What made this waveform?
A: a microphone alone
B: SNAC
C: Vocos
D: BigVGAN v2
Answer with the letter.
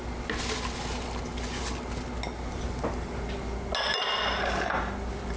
A